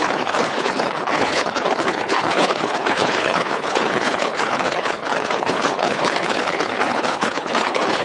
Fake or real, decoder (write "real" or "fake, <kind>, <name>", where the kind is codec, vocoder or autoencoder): fake, codec, HILCodec